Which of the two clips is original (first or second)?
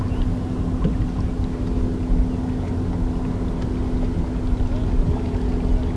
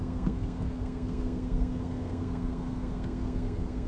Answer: first